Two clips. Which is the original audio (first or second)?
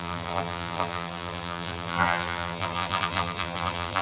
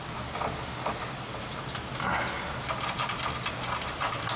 second